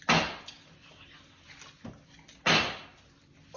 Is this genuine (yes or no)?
yes